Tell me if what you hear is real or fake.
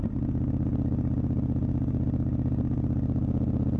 real